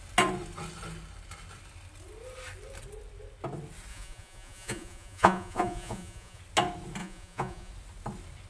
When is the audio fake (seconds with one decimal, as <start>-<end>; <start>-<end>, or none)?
3.9-6.4; 7.0-7.7